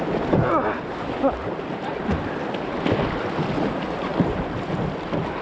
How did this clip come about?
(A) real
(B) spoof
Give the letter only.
A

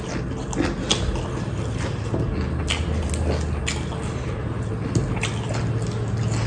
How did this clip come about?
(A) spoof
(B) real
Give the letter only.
B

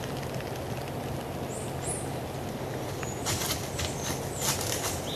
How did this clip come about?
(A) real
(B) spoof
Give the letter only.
A